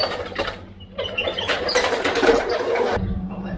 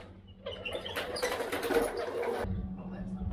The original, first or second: second